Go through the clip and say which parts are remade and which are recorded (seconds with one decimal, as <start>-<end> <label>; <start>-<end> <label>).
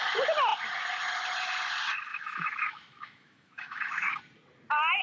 0.0-2.1 recorded; 2.1-4.2 remade; 4.2-5.0 recorded